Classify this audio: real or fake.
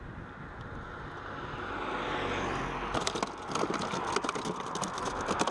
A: real